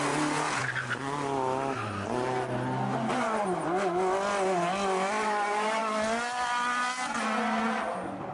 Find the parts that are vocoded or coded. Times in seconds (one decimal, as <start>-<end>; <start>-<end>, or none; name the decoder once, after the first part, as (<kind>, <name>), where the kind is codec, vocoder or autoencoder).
none